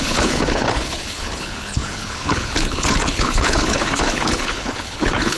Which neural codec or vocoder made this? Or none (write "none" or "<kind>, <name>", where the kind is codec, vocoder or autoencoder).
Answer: codec, HILCodec